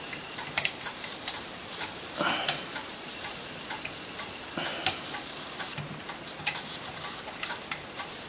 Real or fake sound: fake